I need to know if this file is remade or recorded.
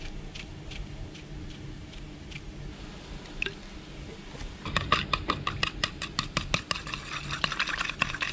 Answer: recorded